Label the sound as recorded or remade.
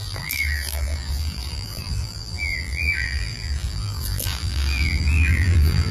remade